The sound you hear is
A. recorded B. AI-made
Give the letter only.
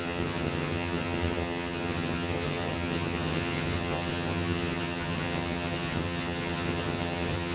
B